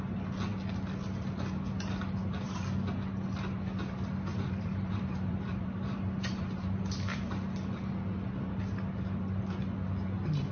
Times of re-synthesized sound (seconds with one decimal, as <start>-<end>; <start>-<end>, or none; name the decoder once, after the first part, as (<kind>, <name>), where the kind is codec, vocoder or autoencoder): 4.3-6.8 (vocoder, BigVGAN v2)